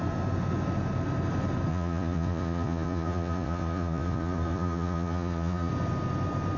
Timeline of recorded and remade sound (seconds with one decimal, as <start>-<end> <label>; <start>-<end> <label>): 0.0-1.7 recorded; 1.7-5.7 remade; 5.7-6.6 recorded